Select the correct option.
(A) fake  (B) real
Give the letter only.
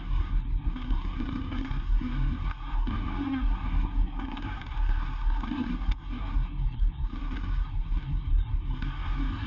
A